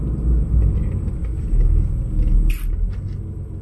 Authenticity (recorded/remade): recorded